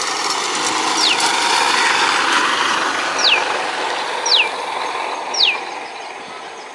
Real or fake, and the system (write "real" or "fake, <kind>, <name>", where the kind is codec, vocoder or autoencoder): real